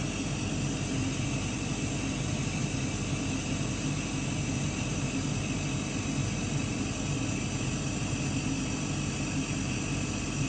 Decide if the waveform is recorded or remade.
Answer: recorded